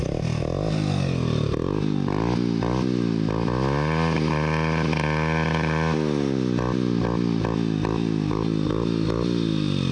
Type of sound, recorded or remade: recorded